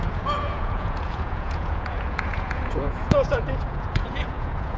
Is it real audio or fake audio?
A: fake